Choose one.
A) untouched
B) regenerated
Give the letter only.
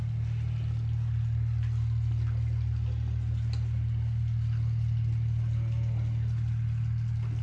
A